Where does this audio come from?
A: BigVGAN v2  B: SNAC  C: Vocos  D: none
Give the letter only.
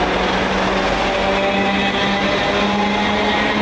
D